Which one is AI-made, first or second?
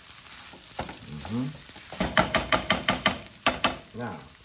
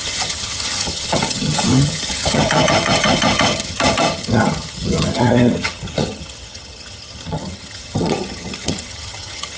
second